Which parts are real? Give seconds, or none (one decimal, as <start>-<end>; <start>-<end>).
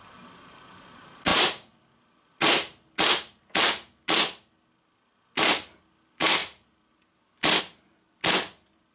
0.0-6.4; 7.6-8.9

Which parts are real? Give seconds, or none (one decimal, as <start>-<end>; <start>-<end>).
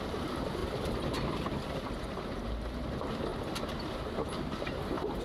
0.6-2.3; 3.3-3.9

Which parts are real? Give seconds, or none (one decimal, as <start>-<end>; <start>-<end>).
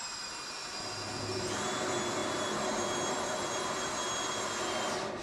0.0-0.6; 1.6-5.2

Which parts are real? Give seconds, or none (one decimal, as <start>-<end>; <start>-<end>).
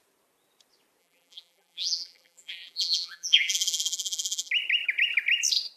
0.0-1.0; 4.5-5.8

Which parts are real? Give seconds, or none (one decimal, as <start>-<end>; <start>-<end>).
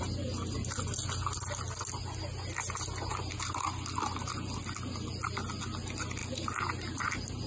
0.0-7.5